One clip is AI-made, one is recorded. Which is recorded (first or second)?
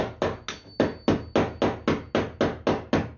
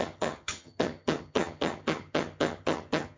first